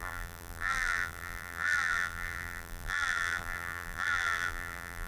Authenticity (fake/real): fake